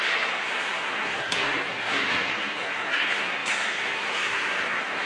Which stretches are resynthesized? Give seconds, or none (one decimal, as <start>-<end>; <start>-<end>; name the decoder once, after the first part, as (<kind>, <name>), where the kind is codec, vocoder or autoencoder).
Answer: 0.0-5.1 (codec, SNAC)